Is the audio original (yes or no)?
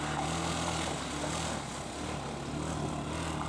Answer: yes